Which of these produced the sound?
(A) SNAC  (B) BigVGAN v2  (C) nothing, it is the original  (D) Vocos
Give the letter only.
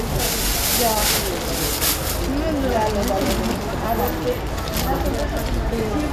C